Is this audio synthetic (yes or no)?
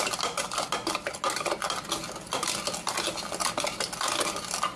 no